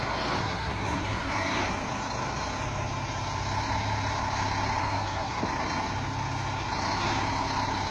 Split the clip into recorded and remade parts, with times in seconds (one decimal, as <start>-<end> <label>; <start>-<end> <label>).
0.0-0.4 recorded; 0.4-1.6 remade; 1.6-4.8 recorded; 4.8-5.4 remade; 5.4-7.9 recorded